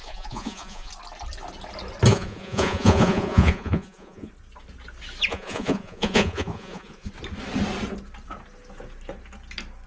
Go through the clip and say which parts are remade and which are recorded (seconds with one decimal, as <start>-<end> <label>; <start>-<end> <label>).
0.0-0.9 remade; 0.9-2.1 recorded; 2.1-4.3 remade; 4.3-5.3 recorded; 5.3-7.1 remade; 7.1-9.9 recorded